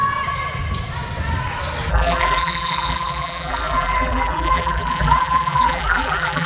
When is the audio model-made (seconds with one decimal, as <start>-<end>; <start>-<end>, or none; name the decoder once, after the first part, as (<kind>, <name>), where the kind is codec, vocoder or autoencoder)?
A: 1.9-6.5 (vocoder, BigVGAN v2)